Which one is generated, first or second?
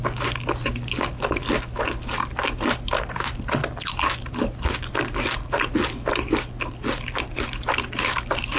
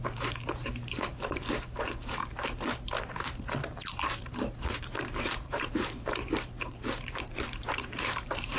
second